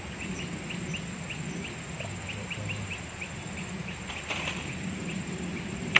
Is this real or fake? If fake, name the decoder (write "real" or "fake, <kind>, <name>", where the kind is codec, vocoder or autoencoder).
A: real